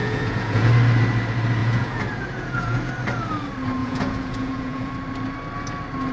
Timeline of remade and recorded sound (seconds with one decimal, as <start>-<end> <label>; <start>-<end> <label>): 0.0-0.7 remade; 0.7-1.6 recorded; 1.6-2.9 remade; 2.9-3.8 recorded; 3.8-4.9 remade; 4.9-6.1 recorded